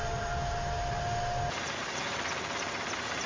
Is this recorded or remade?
recorded